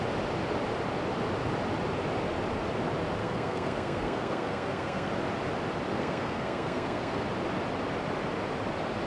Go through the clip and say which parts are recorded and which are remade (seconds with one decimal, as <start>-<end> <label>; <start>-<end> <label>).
0.0-3.2 recorded; 3.2-5.1 remade; 5.1-5.9 recorded; 5.9-7.2 remade; 7.2-9.1 recorded